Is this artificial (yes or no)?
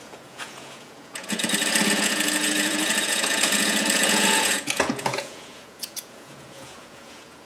yes